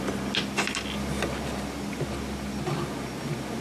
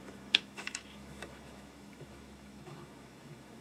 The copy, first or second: second